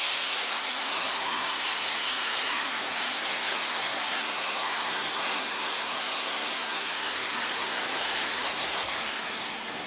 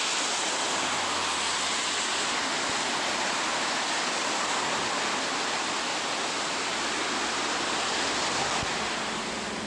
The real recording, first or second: second